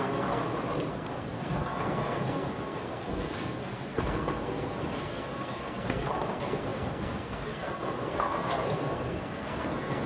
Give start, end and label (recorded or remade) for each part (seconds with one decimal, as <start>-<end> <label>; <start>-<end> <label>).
0.0-0.4 remade; 0.4-0.9 recorded; 0.9-10.1 remade